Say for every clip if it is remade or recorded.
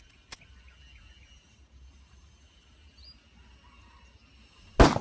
recorded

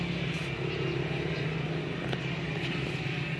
recorded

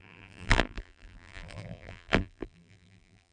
remade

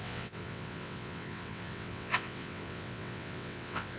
remade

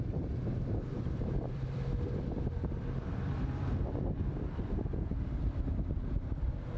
remade